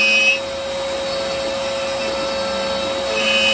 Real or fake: real